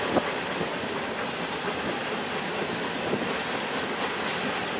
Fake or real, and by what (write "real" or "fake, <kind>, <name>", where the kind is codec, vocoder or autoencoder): real